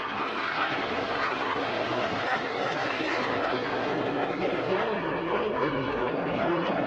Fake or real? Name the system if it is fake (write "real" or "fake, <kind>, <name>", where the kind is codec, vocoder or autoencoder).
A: fake, codec, SNAC